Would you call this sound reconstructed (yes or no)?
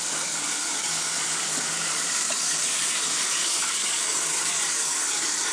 yes